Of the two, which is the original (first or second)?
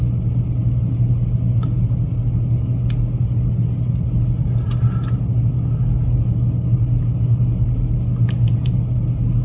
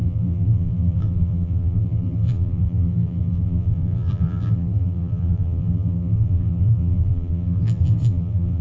first